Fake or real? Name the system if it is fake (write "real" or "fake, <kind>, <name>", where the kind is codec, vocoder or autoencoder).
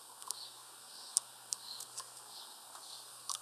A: fake, codec, SNAC